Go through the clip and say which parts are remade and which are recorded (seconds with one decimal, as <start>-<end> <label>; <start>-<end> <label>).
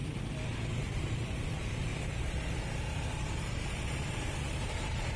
0.0-0.7 recorded; 0.7-5.2 remade